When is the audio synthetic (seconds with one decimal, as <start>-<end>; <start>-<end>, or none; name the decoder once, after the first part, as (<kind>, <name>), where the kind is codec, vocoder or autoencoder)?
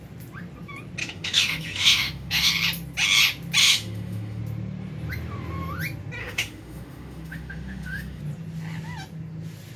1.0-2.5 (autoencoder, DAC-VAE); 3.6-4.4; 6.2-8.2